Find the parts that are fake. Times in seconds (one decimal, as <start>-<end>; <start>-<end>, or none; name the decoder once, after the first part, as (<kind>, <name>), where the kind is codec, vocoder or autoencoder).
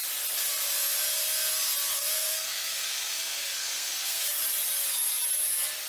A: 1.9-4.2 (codec, SNAC)